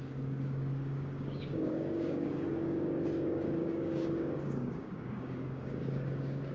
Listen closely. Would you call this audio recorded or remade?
remade